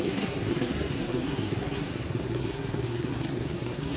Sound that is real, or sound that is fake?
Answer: fake